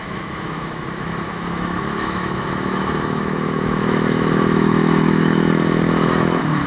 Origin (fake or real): fake